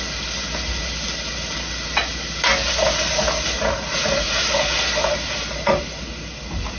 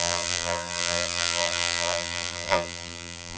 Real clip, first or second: first